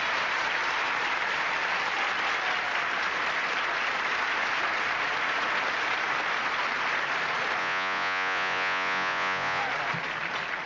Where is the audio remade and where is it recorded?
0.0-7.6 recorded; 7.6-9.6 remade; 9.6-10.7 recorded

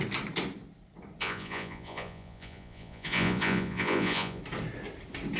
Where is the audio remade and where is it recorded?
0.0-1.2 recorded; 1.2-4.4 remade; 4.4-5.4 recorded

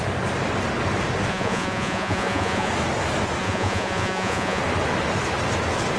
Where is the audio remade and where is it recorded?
0.0-1.3 recorded; 1.3-2.7 remade; 2.7-3.4 recorded; 3.4-4.6 remade; 4.6-6.0 recorded